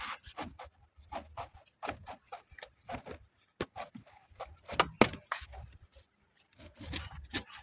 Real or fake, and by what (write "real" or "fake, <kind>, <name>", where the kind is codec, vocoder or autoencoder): real